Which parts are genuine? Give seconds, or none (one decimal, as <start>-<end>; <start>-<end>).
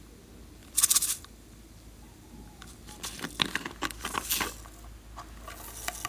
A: 0.0-0.6; 4.3-6.1